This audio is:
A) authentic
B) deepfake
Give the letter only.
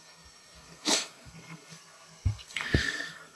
B